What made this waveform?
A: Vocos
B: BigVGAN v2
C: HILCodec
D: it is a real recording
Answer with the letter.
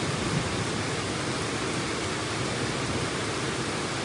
D